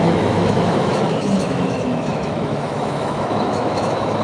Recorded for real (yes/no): no